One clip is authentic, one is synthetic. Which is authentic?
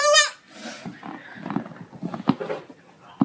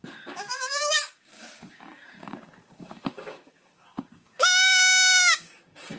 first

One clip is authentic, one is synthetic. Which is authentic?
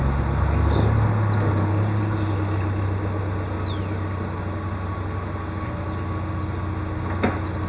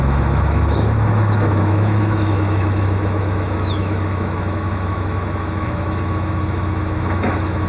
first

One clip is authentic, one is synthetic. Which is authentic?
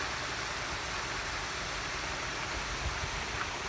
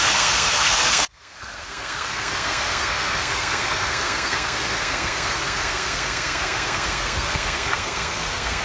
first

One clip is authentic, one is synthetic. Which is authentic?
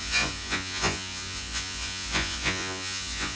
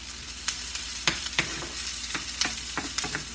second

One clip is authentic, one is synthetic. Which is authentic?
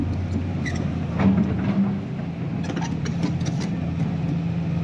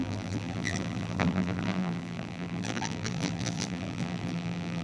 first